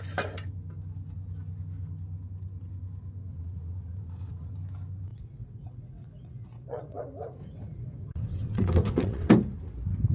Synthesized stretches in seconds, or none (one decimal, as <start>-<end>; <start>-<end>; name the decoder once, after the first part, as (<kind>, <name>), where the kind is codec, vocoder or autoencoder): 3.3-4.5 (vocoder, WaveNeXt); 5.1-7.0; 7.4-9.3